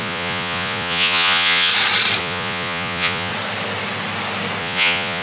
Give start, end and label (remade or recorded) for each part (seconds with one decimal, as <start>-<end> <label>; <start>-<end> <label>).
0.0-1.7 remade; 1.7-2.2 recorded; 2.2-3.3 remade; 3.3-4.6 recorded; 4.6-5.2 remade